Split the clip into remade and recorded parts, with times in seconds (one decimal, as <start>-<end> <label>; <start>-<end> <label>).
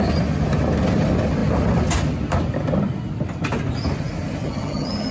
0.0-4.4 recorded; 4.4-5.1 remade